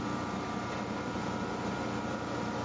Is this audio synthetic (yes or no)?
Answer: no